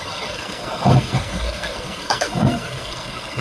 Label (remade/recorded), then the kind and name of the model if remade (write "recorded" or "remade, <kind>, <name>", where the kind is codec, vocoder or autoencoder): remade, codec, SNAC